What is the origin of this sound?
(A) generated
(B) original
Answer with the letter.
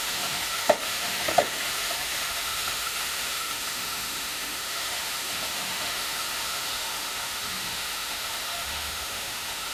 A